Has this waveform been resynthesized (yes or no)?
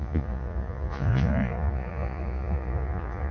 yes